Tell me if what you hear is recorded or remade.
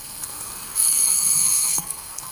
remade